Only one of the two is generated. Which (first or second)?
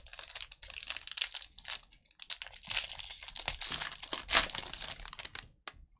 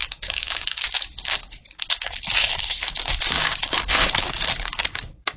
second